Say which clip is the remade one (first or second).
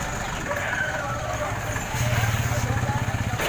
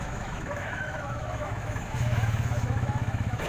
second